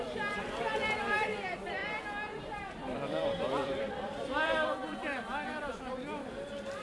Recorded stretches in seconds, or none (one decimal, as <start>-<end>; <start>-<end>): 1.8-2.4